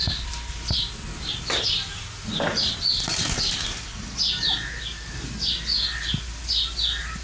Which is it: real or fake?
real